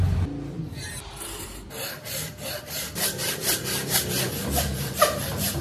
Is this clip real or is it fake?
fake